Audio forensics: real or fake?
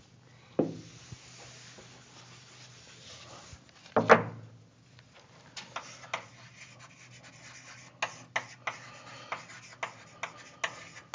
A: real